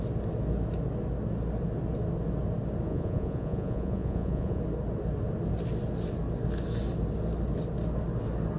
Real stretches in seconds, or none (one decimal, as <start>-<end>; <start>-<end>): 0.0-2.9; 4.6-8.6